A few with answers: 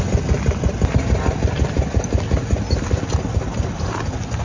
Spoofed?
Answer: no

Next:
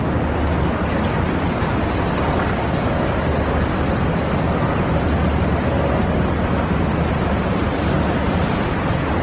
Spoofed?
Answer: no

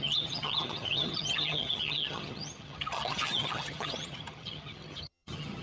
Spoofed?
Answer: yes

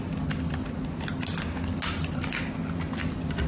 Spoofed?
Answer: no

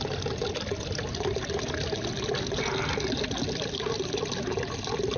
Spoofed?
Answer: no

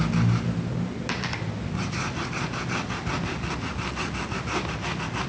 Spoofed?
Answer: no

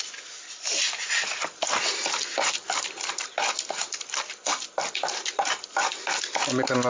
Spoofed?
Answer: no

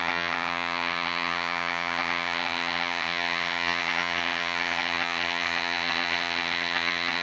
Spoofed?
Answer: yes